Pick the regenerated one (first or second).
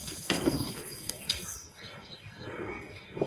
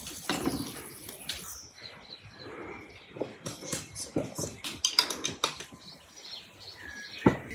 first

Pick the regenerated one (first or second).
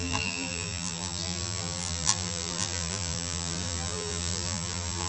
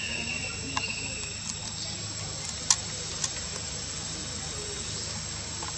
first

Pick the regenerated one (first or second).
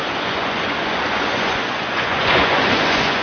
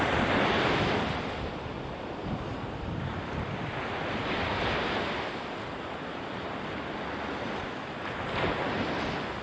first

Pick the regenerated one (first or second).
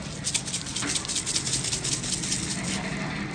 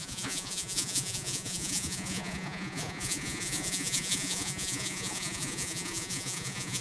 second